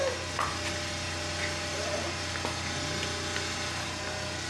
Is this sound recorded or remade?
recorded